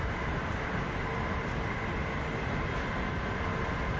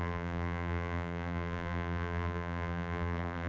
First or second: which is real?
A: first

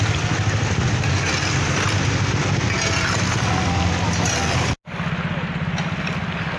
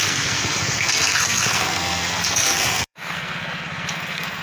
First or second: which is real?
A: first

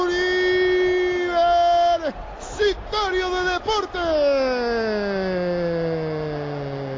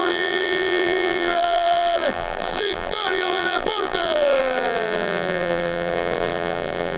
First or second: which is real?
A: first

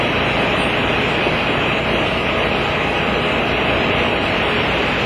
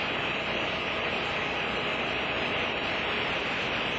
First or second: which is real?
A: first